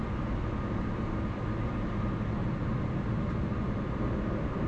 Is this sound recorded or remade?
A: recorded